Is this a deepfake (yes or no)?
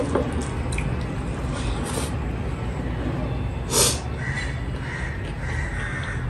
no